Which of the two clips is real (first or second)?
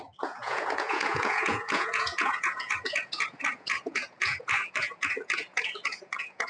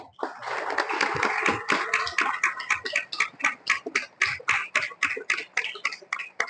second